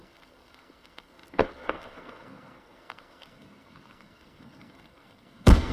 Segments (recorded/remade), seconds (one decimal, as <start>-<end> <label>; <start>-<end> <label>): 0.0-5.7 remade